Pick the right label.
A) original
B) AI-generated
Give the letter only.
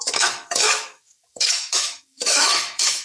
B